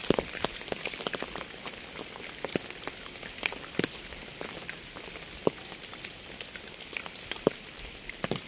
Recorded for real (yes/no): yes